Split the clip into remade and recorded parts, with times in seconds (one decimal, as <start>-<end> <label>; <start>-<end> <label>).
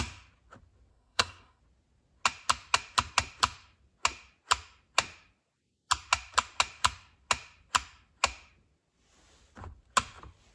0.0-0.9 recorded; 0.9-1.6 remade; 1.6-10.5 recorded